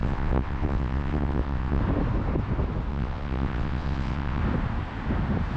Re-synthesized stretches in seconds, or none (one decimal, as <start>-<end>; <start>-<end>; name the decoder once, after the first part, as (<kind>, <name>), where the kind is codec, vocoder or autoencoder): 0.0-1.8 (vocoder, WaveNeXt); 2.9-4.4